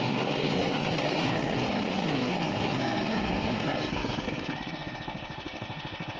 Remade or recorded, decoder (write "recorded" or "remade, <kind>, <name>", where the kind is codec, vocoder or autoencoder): remade, codec, SNAC